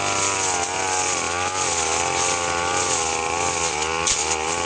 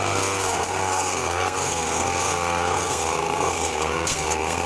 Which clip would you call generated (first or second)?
second